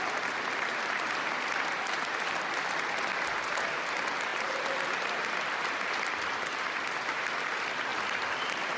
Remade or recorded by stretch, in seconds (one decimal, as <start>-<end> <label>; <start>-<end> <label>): 0.0-4.3 recorded; 4.3-5.9 remade; 5.9-8.8 recorded